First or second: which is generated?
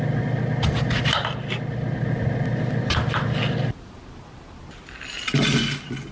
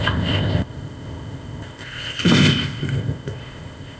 second